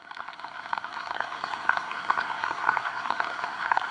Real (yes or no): no